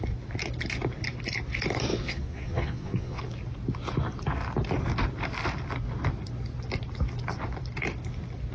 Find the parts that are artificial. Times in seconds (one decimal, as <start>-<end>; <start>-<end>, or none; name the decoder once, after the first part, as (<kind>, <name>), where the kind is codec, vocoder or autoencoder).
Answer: 1.9-3.2 (vocoder, Vocos)